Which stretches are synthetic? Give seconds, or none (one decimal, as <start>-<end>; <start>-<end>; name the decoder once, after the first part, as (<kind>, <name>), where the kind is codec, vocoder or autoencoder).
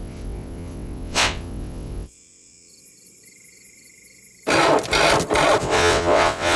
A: 0.0-2.7 (vocoder, WaveNeXt); 5.6-6.6